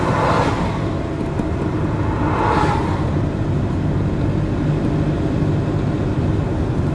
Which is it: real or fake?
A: real